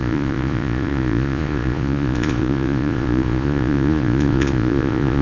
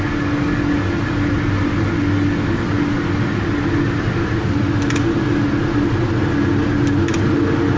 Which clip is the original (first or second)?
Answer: second